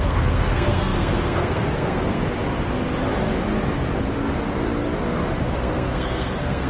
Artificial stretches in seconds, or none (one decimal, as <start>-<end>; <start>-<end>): 0.0-2.2; 5.4-6.7